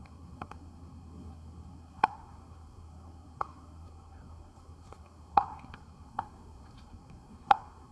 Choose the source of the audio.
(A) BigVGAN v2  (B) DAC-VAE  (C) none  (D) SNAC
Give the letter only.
D